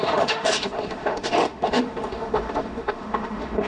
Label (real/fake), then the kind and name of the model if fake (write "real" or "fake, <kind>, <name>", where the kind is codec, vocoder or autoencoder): fake, autoencoder, DAC-VAE